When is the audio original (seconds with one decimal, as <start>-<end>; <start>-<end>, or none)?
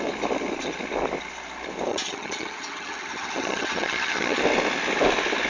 0.0-1.9; 4.4-5.5